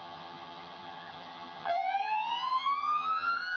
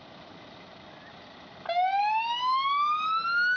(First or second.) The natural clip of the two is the second